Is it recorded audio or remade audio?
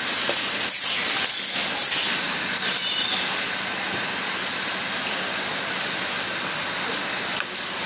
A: recorded